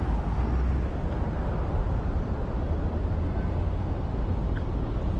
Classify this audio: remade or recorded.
recorded